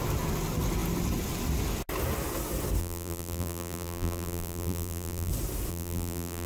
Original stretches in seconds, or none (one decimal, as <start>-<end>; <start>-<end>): 0.0-2.8; 5.3-5.7